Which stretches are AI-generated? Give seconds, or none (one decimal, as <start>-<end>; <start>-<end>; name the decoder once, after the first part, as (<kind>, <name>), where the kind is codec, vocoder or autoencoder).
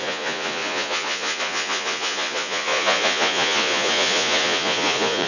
0.0-5.3 (vocoder, Vocos)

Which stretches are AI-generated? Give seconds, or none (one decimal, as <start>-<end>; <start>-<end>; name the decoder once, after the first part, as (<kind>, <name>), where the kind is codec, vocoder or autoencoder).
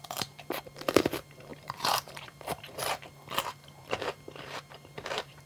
0.0-5.5 (vocoder, BigVGAN v2)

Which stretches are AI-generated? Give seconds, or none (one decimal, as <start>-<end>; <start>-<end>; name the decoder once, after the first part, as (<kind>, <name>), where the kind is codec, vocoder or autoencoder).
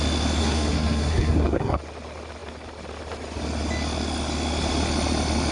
0.4-1.8 (codec, SNAC)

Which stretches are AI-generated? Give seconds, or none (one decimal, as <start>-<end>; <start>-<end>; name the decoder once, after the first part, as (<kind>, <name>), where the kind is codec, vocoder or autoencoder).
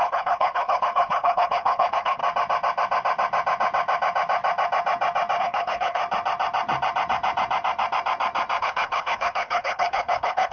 0.0-2.2 (codec, HILCodec); 5.4-6.0; 8.6-10.5